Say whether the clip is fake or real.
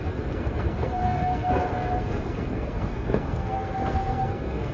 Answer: fake